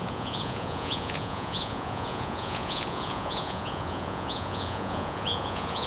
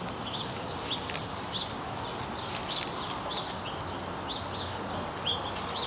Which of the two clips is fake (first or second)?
first